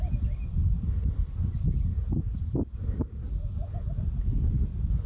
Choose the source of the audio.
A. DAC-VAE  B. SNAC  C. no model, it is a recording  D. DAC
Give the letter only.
C